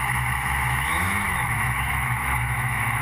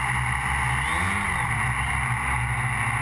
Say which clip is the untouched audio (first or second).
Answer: second